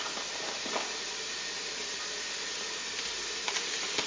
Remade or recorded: recorded